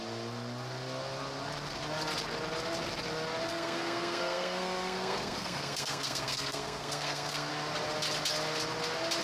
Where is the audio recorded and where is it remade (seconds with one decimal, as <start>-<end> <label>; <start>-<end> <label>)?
0.0-3.5 recorded; 3.5-7.5 remade; 7.5-9.2 recorded